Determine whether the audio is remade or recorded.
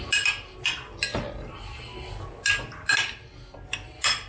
recorded